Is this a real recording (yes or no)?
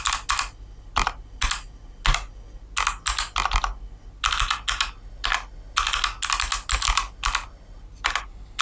yes